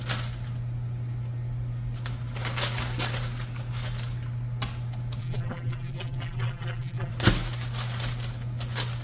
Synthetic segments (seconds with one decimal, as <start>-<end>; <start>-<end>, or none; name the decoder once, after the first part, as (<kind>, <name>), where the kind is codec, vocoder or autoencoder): 5.2-7.1 (vocoder, BigVGAN v2)